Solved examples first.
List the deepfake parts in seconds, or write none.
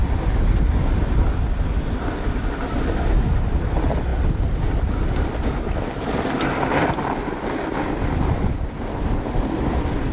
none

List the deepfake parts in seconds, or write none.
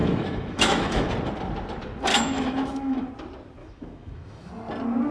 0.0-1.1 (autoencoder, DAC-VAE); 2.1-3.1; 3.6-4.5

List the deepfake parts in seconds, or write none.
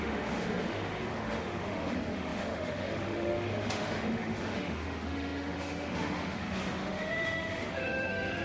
0.0-8.4 (autoencoder, DAC-VAE)